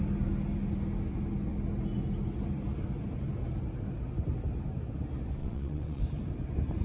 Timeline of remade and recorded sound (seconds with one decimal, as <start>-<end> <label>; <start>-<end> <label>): 0.0-5.4 recorded; 5.4-6.0 remade; 6.0-6.8 recorded